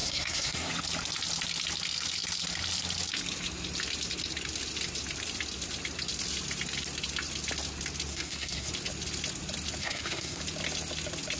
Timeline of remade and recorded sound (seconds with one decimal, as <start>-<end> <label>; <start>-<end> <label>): 0.0-0.7 remade; 0.7-8.1 recorded; 8.1-8.7 remade; 8.7-9.8 recorded; 9.8-10.4 remade; 10.4-11.4 recorded